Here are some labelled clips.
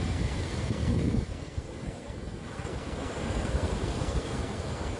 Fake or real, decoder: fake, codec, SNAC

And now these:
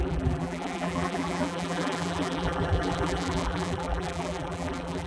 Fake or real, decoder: fake, vocoder, BigVGAN v2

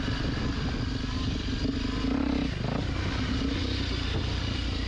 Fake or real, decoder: real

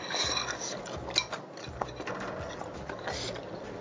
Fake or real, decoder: real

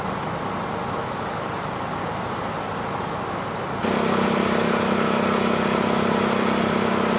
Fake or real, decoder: real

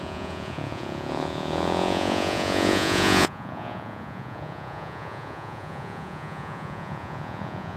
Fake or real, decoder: fake, vocoder, Vocos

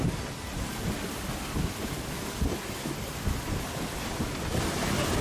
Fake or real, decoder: real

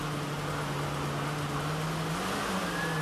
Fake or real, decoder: real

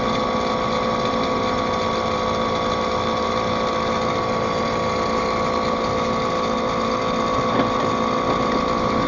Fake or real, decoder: real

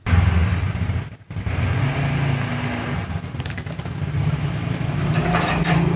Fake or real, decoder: real